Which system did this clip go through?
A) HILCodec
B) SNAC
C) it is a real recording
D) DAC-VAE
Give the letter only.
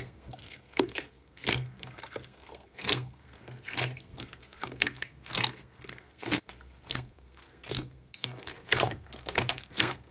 B